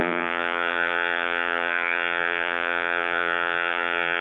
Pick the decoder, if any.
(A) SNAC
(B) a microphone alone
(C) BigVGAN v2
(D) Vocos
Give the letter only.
C